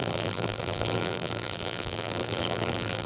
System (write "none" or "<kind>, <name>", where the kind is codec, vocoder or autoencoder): vocoder, BigVGAN v2